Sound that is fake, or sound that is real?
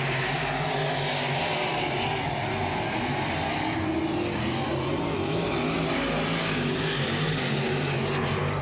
real